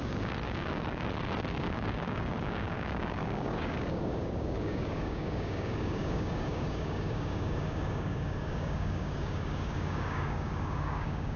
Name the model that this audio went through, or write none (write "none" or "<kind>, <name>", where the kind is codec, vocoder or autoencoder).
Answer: codec, DAC